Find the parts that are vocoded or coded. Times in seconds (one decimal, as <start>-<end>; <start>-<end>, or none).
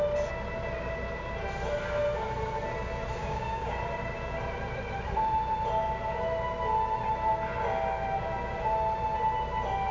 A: 3.2-3.7